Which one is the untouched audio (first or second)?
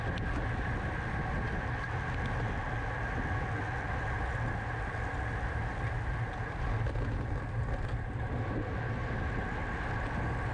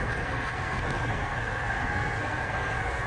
first